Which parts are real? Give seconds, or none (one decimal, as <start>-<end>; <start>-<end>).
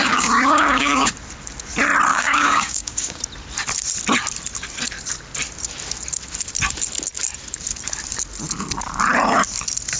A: 1.1-2.1; 3.2-10.0